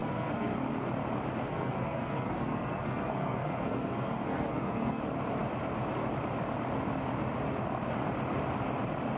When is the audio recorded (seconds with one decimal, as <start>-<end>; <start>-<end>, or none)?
0.7-1.5; 5.0-9.2